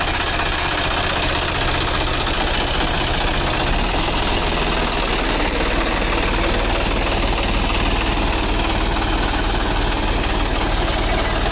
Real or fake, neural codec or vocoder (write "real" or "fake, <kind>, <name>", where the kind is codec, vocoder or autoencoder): real